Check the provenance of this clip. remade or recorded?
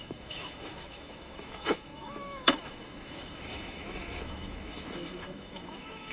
remade